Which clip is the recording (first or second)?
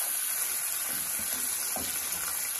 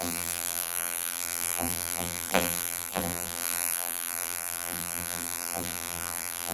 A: first